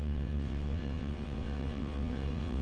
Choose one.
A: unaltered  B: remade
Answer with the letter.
B